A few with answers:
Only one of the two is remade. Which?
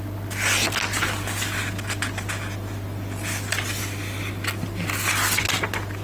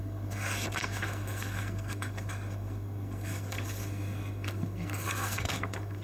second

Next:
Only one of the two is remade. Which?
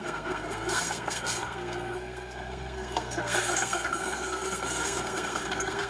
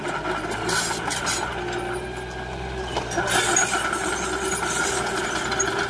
first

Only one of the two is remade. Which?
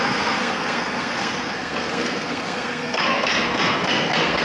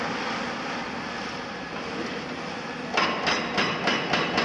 first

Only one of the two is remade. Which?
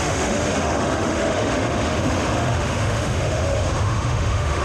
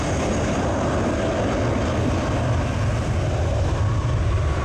first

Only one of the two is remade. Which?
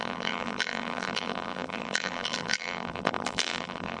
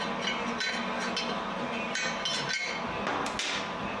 first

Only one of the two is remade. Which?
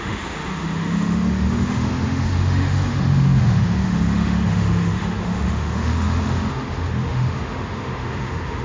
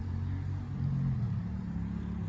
first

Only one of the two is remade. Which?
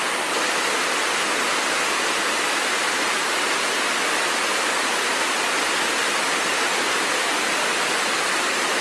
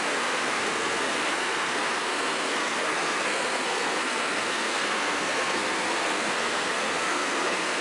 second